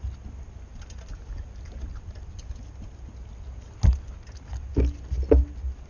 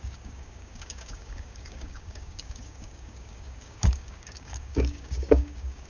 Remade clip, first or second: second